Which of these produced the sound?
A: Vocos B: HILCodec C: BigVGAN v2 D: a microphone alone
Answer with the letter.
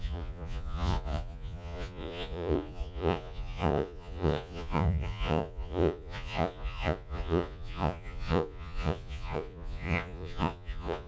A